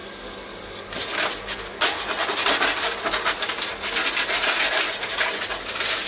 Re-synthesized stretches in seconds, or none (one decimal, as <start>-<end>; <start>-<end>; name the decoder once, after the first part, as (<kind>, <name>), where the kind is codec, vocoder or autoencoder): none